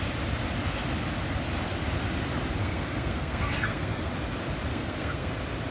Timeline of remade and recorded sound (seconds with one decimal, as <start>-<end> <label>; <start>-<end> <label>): 0.0-2.6 recorded; 2.6-4.1 remade; 4.1-4.7 recorded; 4.7-5.3 remade; 5.3-5.7 recorded